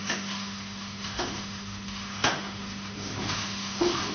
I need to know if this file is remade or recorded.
remade